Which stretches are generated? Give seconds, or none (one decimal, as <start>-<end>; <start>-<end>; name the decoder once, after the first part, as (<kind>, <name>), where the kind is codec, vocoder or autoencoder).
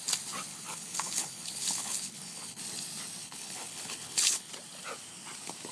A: 0.5-2.6 (codec, HILCodec); 3.2-4.5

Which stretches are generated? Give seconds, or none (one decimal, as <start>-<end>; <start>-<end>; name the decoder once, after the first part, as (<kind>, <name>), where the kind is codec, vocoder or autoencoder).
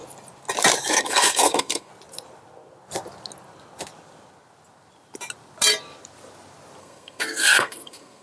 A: 0.9-1.9 (codec, SNAC); 6.8-8.2